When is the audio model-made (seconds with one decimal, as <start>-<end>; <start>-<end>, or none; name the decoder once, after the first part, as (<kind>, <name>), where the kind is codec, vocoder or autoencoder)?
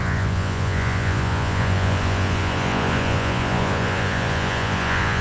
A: 0.0-5.2 (vocoder, Vocos)